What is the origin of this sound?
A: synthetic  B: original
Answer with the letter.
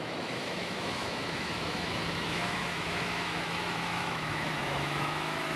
A